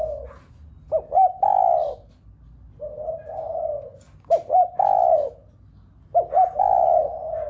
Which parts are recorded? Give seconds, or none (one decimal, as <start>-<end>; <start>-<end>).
0.0-7.5

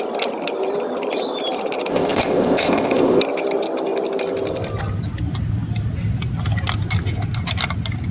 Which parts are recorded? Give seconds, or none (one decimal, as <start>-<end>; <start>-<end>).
0.0-1.9; 3.2-8.1

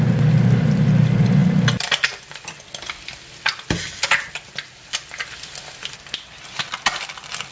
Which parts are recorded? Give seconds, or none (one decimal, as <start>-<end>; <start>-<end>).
0.0-7.5

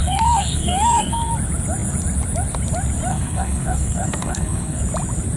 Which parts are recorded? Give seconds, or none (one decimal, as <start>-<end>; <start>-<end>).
1.3-3.1; 4.8-5.4

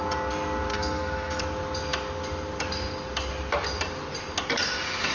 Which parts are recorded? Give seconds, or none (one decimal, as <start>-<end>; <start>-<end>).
0.0-0.7; 1.4-5.1

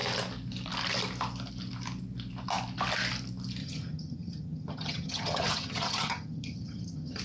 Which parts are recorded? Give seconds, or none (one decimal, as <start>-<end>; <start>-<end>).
0.0-3.6

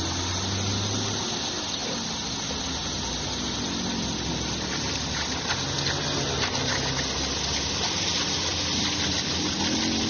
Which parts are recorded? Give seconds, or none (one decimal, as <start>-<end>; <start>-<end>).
0.0-10.1